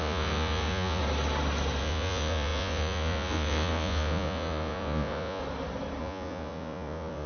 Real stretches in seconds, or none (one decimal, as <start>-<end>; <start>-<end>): 1.0-1.8; 5.4-6.0